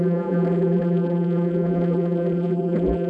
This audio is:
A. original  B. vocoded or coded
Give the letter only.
B